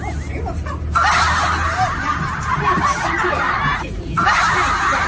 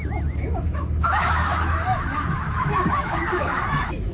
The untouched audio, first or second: first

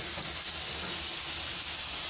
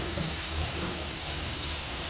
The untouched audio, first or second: first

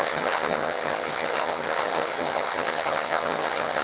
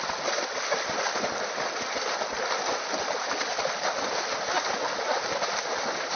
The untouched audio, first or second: second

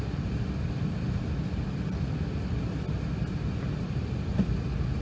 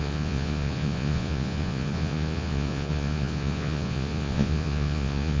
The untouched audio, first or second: first